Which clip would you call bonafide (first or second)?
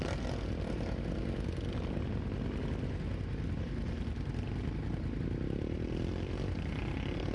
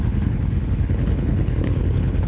first